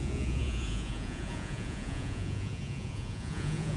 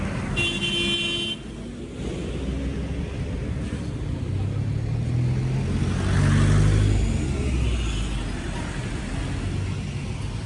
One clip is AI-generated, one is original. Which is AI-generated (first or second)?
first